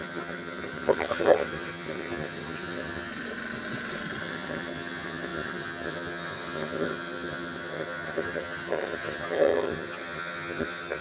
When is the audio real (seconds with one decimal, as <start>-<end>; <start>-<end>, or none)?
3.1-4.2